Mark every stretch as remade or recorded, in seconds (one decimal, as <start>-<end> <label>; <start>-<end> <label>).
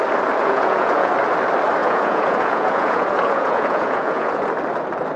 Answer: 0.0-0.4 recorded; 0.4-1.1 remade; 1.1-1.8 recorded; 1.8-4.5 remade; 4.5-5.2 recorded